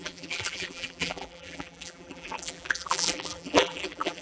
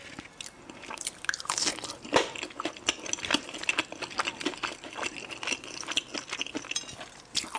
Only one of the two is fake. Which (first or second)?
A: first